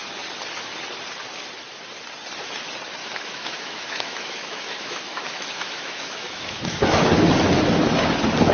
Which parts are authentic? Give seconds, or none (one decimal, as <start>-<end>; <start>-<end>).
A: 0.0-3.0; 7.1-8.5